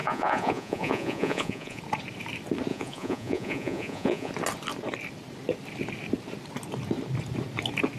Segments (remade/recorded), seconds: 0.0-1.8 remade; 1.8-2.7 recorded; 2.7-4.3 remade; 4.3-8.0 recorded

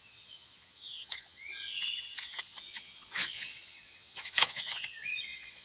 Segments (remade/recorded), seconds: 0.0-5.6 remade